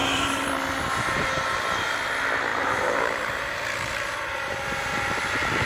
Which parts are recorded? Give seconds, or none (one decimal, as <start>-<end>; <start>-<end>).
0.5-2.5; 4.9-5.7